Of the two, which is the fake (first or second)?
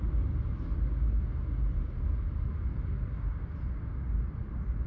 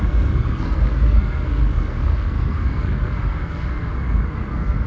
second